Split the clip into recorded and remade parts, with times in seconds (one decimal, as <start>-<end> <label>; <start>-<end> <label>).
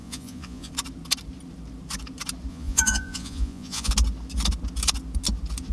0.0-0.7 remade; 0.7-2.5 recorded; 2.5-3.9 remade; 3.9-5.7 recorded